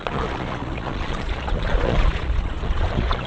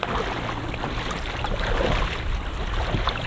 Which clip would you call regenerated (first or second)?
first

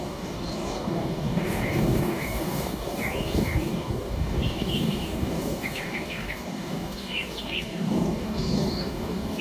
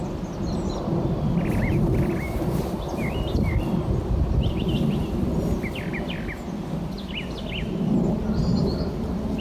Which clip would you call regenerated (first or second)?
first